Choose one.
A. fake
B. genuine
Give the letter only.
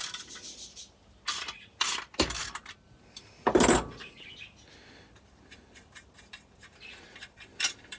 B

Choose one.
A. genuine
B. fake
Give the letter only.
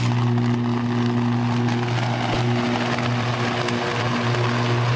A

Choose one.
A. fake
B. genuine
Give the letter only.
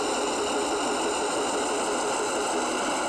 B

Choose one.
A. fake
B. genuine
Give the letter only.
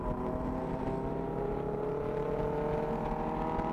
B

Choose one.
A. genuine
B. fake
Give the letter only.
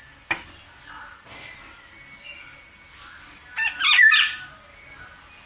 A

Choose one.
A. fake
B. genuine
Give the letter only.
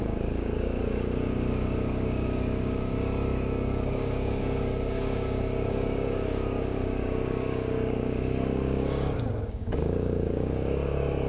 A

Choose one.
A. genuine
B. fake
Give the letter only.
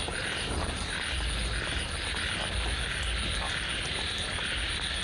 A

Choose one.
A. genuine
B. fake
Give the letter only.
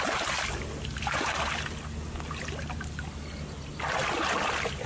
A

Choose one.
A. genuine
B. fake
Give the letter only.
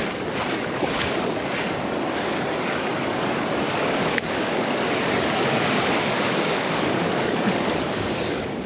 B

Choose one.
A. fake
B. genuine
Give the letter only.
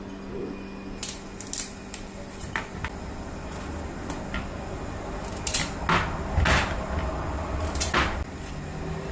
B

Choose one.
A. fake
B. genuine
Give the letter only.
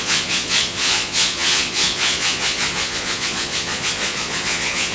A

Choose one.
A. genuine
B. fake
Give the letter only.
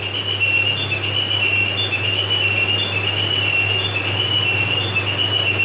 A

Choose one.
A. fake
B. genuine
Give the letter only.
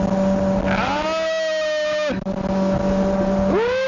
B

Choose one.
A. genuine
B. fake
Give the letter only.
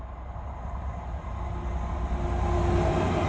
A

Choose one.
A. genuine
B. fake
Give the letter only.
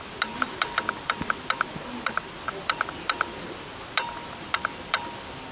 A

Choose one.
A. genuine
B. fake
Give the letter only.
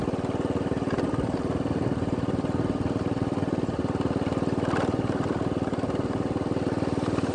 A